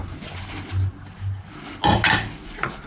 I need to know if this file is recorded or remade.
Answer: recorded